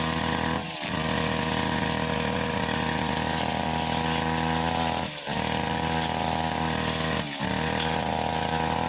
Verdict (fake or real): real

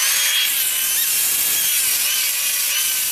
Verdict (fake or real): real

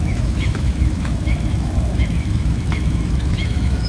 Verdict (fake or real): fake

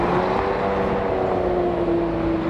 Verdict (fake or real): real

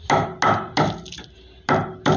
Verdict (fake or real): real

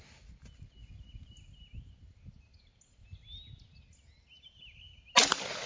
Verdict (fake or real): real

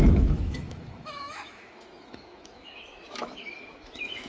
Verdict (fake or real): fake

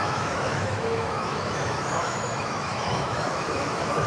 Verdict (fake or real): fake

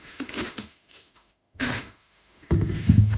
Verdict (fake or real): fake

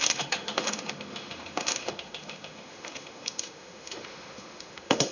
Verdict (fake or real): fake